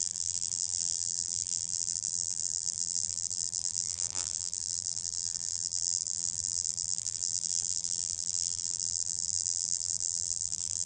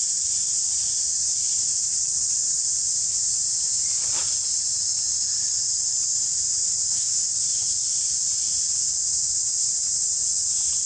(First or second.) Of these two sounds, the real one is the second